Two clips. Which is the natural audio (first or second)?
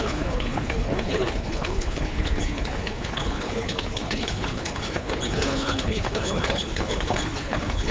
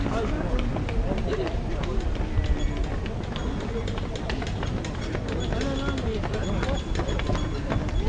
second